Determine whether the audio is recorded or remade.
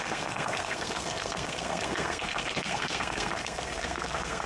remade